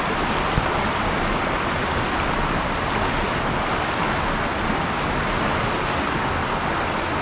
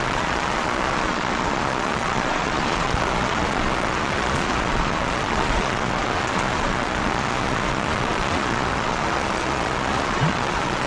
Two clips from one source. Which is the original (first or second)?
first